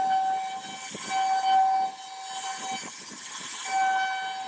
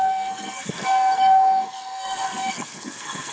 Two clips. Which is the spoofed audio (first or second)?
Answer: second